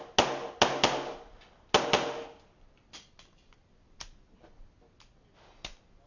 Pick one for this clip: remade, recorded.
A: recorded